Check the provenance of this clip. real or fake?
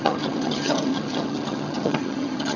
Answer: fake